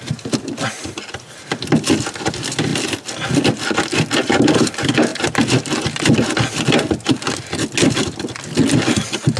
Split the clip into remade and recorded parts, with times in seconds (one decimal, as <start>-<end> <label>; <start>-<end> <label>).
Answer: 0.0-9.4 recorded